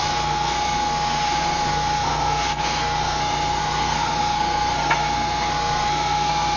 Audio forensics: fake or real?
fake